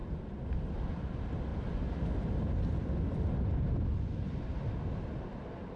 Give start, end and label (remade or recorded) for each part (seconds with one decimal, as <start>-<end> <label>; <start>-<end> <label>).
0.0-1.5 remade; 1.5-5.0 recorded; 5.0-5.8 remade